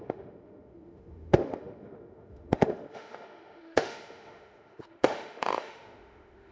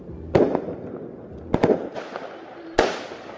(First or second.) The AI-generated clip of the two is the first